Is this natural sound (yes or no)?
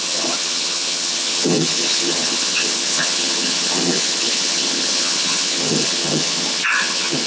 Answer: no